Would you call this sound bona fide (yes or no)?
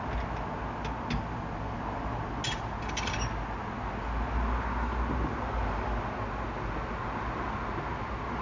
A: yes